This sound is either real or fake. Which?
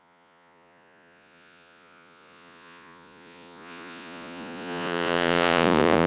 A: fake